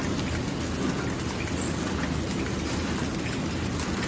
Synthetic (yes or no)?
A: no